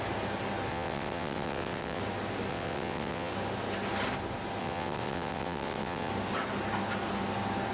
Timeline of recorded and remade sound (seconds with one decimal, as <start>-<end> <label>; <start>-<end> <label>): 0.0-0.7 recorded; 0.7-2.0 remade; 2.0-2.5 recorded; 2.5-3.3 remade; 3.3-4.6 recorded; 4.6-6.1 remade; 6.1-7.7 recorded